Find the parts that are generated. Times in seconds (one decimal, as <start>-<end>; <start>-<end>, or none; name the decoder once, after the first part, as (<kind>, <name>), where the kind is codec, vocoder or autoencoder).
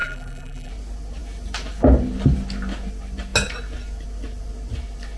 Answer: 0.0-0.7 (vocoder, BigVGAN v2)